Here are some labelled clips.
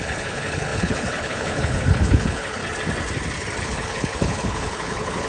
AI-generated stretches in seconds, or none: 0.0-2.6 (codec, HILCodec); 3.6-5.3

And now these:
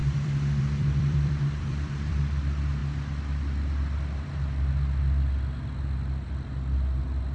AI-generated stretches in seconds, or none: 0.0-2.2 (vocoder, BigVGAN v2)

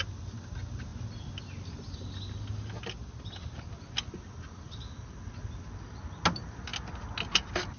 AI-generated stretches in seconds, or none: none

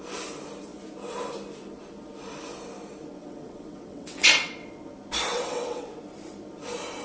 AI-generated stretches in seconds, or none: 3.2-4.7 (vocoder, WaveNeXt); 5.3-5.9

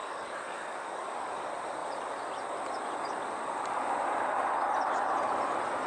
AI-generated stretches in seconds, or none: 0.0-1.4 (codec, DAC)

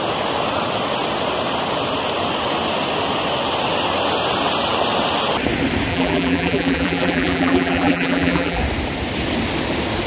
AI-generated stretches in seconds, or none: 5.9-8.6 (vocoder, BigVGAN v2)

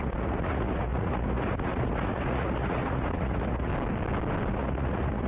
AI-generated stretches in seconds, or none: 0.0-3.7 (vocoder, Vocos); 4.5-5.3